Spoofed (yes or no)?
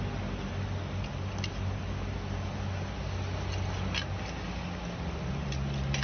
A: no